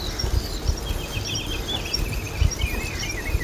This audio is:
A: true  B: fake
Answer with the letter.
A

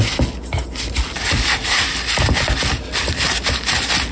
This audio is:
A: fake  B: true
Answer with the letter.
B